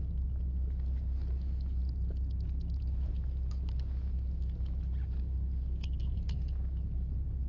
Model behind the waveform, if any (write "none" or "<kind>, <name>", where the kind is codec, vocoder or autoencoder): none